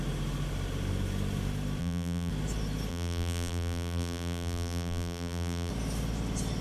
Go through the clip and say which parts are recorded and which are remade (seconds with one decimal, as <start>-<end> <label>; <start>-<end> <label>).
0.0-1.8 recorded; 1.8-2.3 remade; 2.3-2.9 recorded; 2.9-5.7 remade; 5.7-6.6 recorded